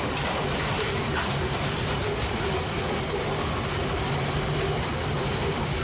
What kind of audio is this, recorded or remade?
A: recorded